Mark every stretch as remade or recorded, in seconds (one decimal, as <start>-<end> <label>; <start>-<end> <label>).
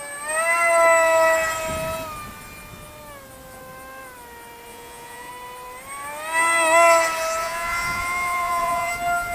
0.0-4.7 recorded; 4.7-5.3 remade; 5.3-7.4 recorded; 7.4-8.9 remade; 8.9-9.3 recorded